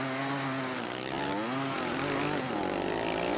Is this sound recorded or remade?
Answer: recorded